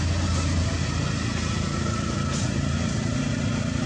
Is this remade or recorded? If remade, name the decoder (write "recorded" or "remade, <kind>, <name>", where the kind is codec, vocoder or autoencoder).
recorded